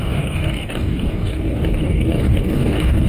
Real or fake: fake